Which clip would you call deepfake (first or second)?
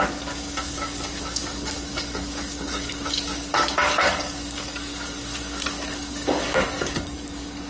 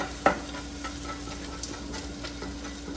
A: first